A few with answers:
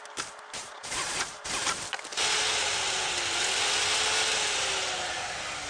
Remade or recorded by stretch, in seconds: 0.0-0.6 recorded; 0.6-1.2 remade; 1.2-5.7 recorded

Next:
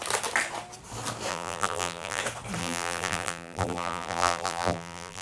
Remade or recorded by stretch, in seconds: 0.0-1.3 recorded; 1.3-2.2 remade; 2.2-2.6 recorded; 2.6-5.2 remade

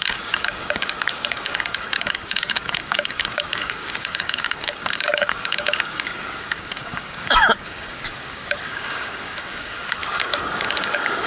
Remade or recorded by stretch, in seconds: 0.0-11.3 remade

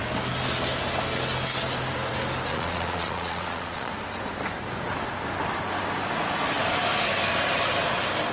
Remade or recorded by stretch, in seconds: 0.0-2.5 recorded; 2.5-3.9 remade; 3.9-8.3 recorded

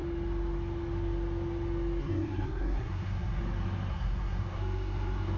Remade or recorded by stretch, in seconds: 0.0-2.0 recorded; 2.0-3.4 remade; 3.4-3.9 recorded; 3.9-5.4 remade

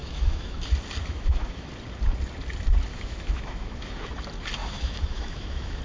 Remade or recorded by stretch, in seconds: 0.0-0.6 remade; 0.6-1.0 recorded; 1.0-1.7 remade; 1.7-2.9 recorded; 2.9-4.1 remade; 4.1-4.6 recorded; 4.6-5.8 remade

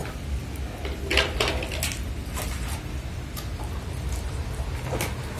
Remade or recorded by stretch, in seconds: 0.0-5.4 recorded